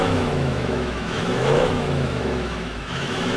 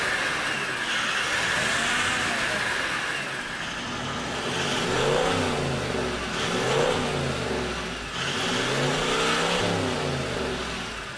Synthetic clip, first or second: first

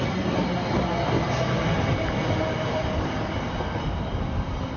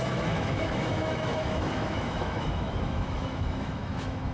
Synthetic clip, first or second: second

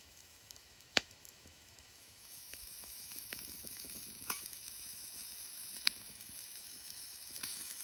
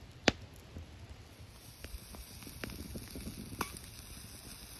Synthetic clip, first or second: first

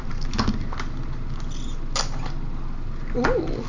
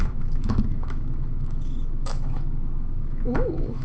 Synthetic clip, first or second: second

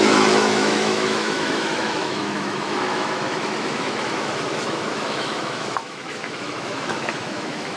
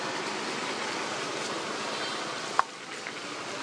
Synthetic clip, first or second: first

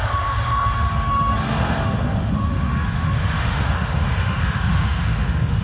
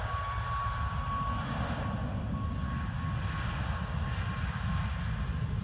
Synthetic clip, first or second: first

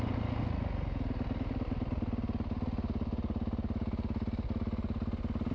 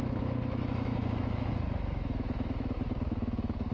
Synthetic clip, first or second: second